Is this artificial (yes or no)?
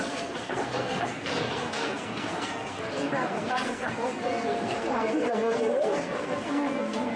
yes